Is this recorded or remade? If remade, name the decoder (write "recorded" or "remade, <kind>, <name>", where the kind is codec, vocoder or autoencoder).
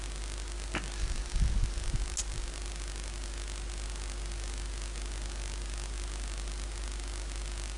recorded